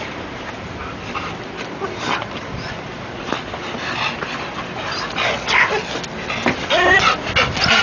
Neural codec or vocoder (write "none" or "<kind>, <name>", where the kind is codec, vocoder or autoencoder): none